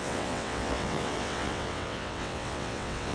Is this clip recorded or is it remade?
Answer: remade